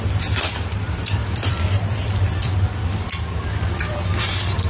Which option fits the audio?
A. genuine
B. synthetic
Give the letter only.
B